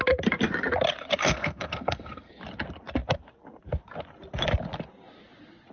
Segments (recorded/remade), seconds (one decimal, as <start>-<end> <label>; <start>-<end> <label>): 0.0-1.2 recorded; 1.2-2.3 remade; 2.3-5.7 recorded